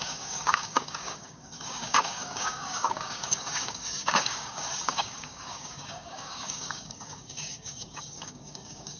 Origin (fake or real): fake